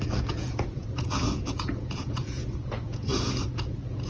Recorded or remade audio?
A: remade